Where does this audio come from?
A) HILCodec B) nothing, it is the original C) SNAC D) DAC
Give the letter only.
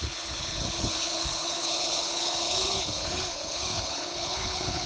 A